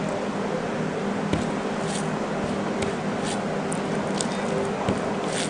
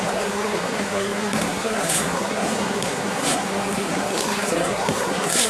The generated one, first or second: second